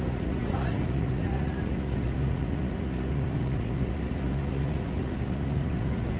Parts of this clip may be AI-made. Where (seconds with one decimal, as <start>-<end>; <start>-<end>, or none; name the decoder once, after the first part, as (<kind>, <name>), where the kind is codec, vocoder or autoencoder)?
0.0-6.2 (vocoder, Vocos)